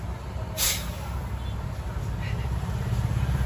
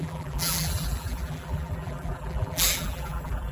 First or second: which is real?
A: first